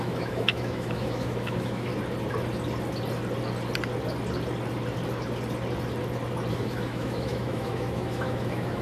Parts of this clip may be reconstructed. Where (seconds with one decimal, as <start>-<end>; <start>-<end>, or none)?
0.0-1.9; 6.5-8.8